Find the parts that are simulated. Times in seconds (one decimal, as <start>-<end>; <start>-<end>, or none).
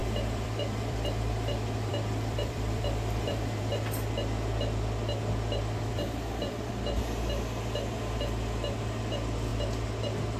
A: 0.0-3.6; 5.9-6.7